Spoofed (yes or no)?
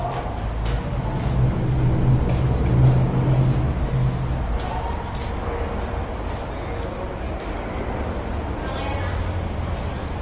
no